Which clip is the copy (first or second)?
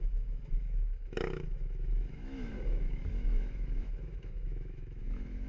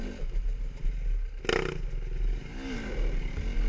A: first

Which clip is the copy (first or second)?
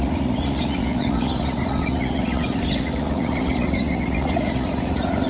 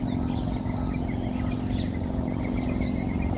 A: first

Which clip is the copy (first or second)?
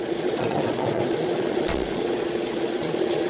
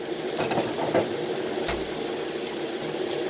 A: first